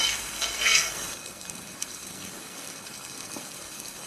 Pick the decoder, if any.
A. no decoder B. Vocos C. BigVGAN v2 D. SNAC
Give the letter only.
D